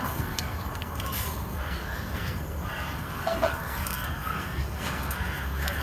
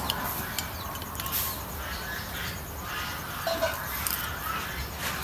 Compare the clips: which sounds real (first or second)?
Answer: second